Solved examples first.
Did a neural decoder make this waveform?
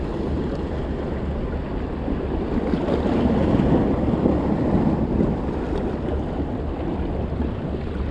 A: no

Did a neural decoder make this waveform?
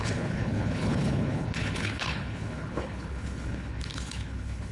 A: yes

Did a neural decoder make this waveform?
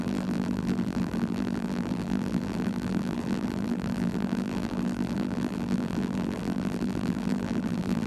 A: yes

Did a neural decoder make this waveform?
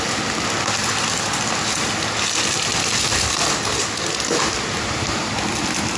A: no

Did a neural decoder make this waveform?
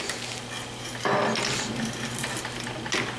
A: no